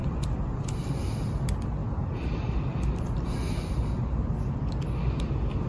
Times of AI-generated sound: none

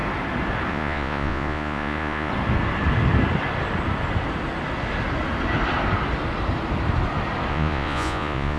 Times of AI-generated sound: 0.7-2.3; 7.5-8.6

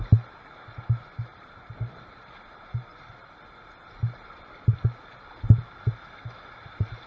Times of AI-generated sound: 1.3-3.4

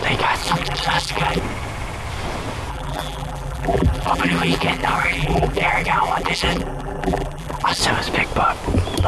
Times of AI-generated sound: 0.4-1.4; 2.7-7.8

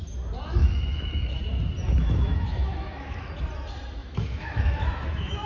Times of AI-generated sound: 0.6-1.4; 2.0-3.3; 4.0-5.5

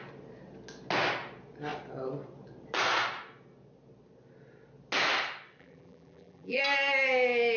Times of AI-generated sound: 5.6-6.6

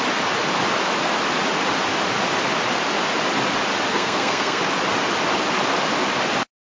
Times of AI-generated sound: 3.9-4.6